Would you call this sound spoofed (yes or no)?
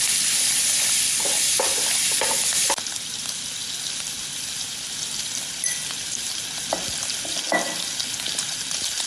no